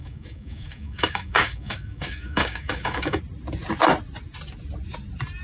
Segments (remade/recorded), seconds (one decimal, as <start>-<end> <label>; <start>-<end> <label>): 0.0-3.2 remade; 3.2-5.4 recorded

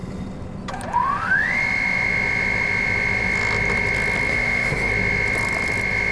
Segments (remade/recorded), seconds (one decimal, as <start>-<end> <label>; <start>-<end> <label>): 0.0-4.3 recorded; 4.3-4.9 remade; 4.9-6.1 recorded

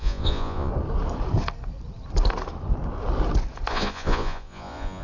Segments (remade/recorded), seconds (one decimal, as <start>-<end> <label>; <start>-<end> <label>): 0.0-0.7 remade; 0.7-3.7 recorded; 3.7-5.0 remade

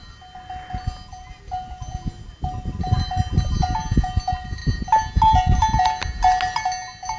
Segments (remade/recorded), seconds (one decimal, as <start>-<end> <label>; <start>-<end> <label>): 0.0-7.2 recorded